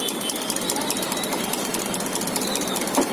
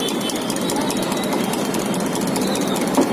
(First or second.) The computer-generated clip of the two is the first